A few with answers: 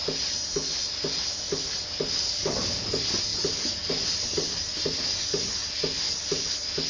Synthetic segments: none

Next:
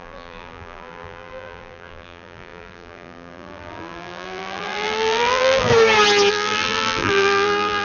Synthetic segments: 0.0-5.7 (vocoder, BigVGAN v2); 6.3-7.8

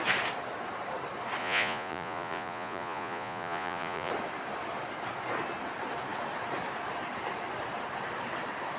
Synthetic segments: 1.4-4.1 (vocoder, Vocos)

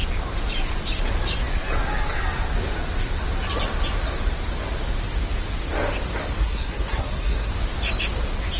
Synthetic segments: 6.4-7.5 (codec, SNAC)

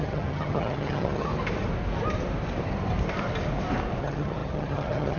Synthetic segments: 0.0-1.3 (vocoder, HiFi-GAN); 4.0-5.2

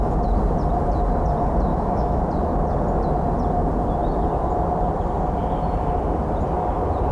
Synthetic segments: 1.7-2.2 (autoencoder, DAC-VAE)